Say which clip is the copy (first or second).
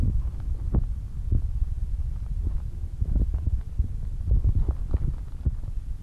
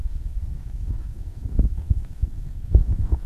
second